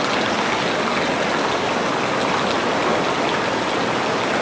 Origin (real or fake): real